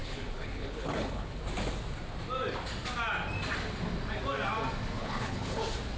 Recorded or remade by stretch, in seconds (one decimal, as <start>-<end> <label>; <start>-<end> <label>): 0.0-1.4 remade; 1.4-5.0 recorded; 5.0-5.6 remade; 5.6-6.0 recorded